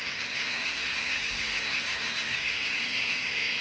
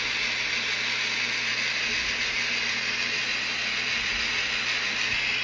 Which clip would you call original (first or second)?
second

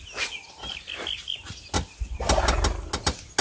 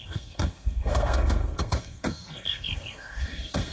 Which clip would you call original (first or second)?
first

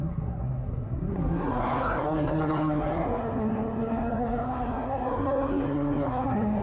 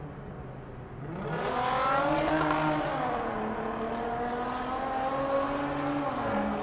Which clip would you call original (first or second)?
second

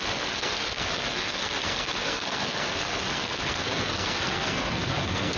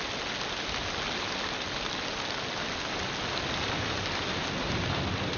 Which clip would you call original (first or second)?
second